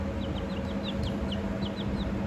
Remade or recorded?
recorded